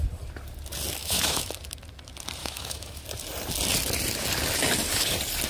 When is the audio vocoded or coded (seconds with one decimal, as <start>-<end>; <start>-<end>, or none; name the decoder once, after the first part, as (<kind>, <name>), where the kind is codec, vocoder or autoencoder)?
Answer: 1.0-1.5 (autoencoder, DAC-VAE); 2.4-3.0